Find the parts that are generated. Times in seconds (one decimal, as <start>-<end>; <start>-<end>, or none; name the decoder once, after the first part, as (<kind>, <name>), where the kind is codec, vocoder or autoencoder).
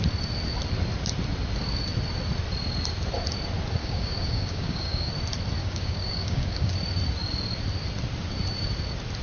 3.8-5.1 (codec, DAC); 5.6-6.7